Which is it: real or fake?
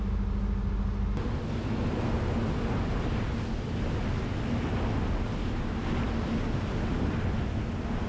real